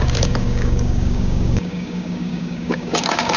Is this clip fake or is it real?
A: fake